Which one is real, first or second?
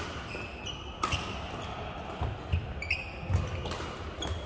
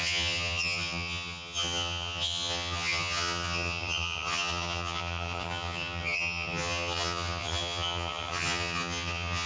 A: first